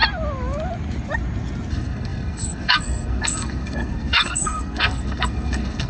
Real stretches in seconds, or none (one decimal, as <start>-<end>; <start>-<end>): 0.0-1.7